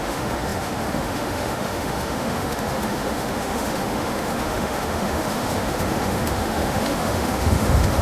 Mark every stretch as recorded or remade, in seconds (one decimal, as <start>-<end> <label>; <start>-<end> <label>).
0.0-8.0 remade